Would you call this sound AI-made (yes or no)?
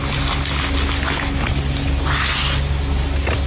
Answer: no